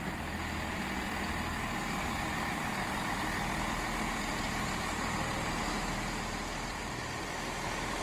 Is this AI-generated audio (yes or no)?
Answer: no